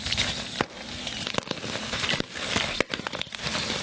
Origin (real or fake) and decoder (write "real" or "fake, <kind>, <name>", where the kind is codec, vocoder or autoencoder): real